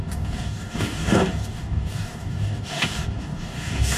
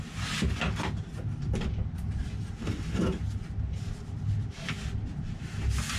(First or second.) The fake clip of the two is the first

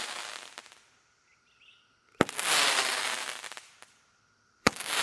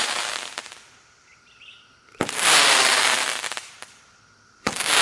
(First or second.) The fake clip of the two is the second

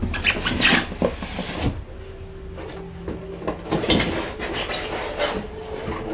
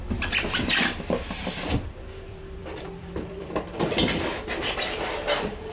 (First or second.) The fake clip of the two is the second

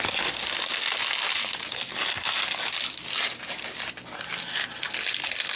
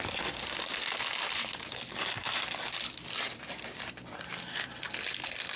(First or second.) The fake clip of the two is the second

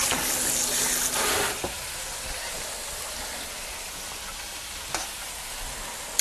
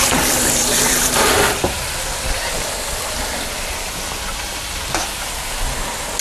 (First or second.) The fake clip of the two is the second